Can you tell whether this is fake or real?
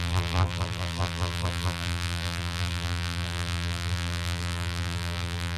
fake